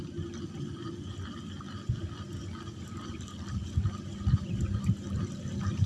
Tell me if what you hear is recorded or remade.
recorded